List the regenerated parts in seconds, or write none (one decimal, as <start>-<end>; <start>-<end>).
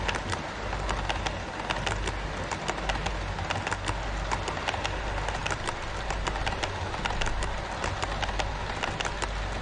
none